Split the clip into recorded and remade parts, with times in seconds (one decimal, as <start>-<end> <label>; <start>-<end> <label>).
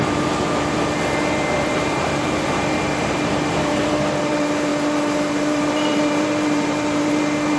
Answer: 0.0-7.6 remade